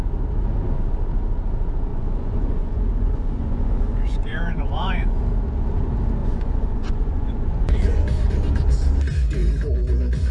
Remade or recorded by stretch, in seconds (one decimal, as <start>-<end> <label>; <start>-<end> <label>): 0.0-1.9 recorded; 1.9-5.2 remade; 5.2-6.2 recorded; 6.2-8.3 remade; 8.3-10.3 recorded